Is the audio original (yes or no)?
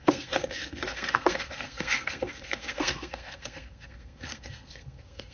no